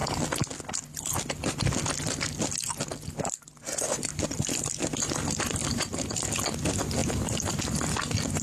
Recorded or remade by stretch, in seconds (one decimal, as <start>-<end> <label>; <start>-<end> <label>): 0.0-5.6 recorded; 5.6-6.2 remade; 6.2-7.0 recorded; 7.0-7.6 remade; 7.6-8.4 recorded